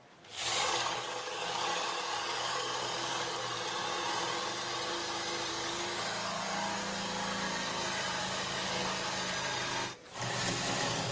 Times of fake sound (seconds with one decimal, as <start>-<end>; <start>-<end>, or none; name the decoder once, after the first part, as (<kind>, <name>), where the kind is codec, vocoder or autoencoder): 0.0-3.4 (codec, DAC); 5.5-6.8; 8.2-8.8; 10.5-11.1